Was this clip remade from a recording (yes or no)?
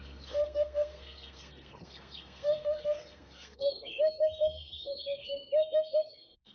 yes